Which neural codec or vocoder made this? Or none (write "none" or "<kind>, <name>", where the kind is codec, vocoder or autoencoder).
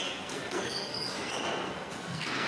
codec, SNAC